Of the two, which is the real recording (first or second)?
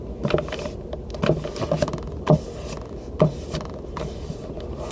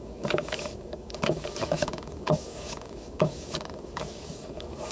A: first